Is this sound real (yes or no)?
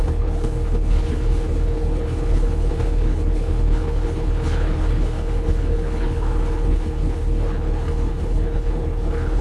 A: no